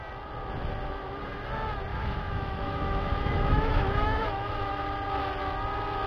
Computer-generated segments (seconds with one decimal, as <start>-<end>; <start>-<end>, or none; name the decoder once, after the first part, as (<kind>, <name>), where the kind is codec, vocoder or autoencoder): 1.9-4.8 (autoencoder, DAC-VAE)